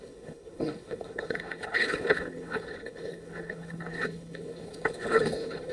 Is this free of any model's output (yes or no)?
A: no